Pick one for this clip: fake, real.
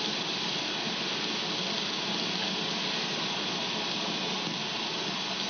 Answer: real